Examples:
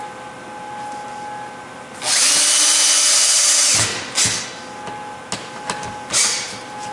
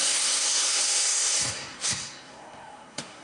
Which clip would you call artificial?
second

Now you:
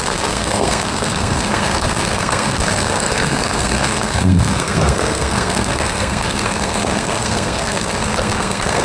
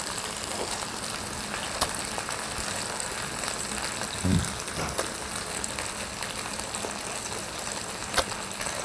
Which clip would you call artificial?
first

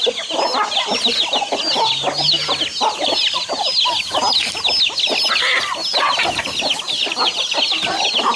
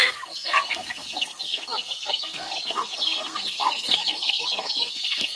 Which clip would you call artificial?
second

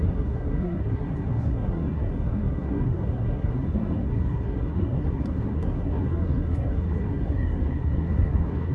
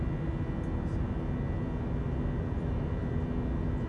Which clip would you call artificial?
first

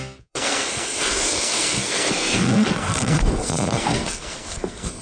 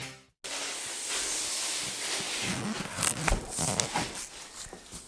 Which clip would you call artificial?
first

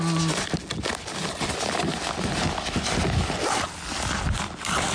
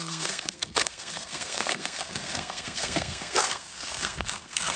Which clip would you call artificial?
second